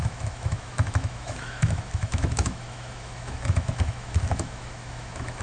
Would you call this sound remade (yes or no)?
yes